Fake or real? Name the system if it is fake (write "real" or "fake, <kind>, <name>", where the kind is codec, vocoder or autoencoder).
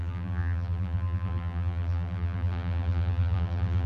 fake, vocoder, BigVGAN v2